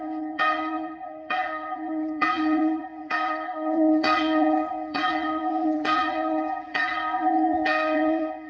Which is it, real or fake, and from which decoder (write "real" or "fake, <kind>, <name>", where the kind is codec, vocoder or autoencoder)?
fake, vocoder, Vocos